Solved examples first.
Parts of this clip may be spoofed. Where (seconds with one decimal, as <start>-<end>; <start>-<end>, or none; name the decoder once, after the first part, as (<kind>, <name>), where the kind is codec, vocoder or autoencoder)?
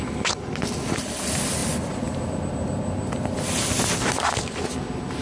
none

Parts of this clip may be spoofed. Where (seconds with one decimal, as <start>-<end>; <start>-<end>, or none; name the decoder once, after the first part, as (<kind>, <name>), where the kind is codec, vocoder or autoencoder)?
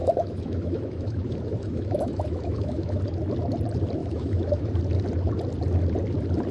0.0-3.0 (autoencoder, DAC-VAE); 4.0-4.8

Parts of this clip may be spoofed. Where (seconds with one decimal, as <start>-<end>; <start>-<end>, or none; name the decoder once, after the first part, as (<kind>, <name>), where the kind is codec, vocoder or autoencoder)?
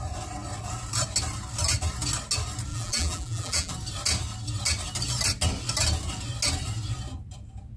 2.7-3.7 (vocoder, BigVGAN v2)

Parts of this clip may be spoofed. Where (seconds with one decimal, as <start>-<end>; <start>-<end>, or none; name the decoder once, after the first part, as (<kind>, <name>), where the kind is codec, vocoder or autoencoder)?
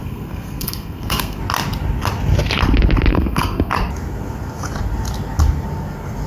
0.0-1.4 (codec, SNAC); 3.1-3.7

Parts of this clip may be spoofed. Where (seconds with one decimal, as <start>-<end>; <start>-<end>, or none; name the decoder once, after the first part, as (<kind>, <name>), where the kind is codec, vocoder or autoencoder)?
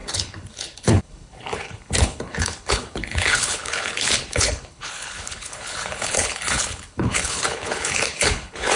0.0-8.8 (codec, HILCodec)